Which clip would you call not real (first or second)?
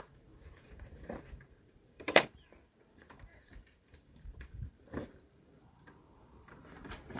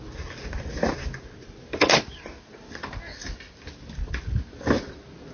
first